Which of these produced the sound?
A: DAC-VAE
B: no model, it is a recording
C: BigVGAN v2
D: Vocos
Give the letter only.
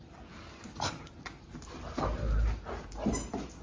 B